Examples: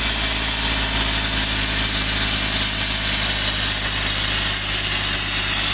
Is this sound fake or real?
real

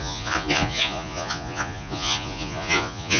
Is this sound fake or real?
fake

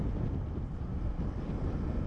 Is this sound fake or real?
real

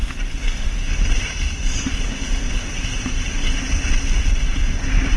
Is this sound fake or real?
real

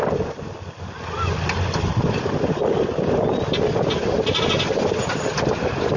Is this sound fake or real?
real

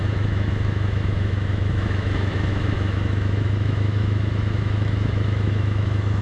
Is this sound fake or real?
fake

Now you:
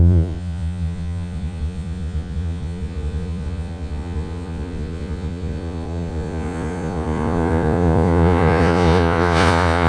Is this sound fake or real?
fake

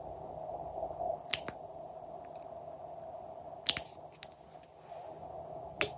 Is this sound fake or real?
real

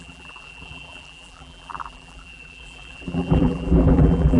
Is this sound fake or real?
fake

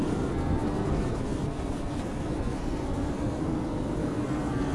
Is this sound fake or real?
fake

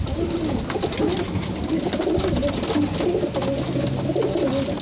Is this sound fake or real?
real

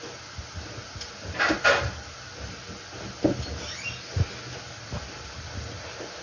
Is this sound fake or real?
real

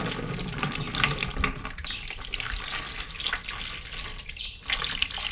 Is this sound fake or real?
real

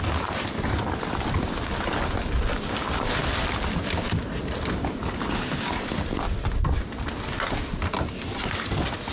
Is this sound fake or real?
real